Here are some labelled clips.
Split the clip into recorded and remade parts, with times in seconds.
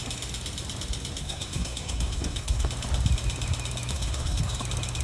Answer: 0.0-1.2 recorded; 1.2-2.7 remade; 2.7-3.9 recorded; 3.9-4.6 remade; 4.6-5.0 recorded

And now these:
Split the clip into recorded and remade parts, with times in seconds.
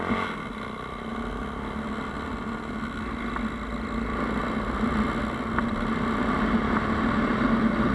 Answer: 0.0-7.9 recorded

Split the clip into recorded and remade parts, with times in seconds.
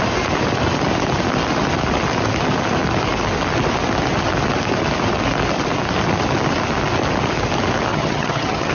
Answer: 0.0-7.9 recorded; 7.9-8.7 remade